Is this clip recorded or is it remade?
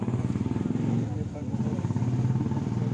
recorded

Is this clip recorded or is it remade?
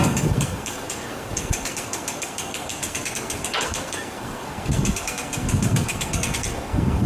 remade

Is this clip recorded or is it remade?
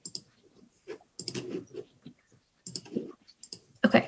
recorded